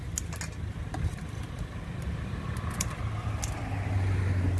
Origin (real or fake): real